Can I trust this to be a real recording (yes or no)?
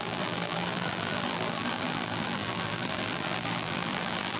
no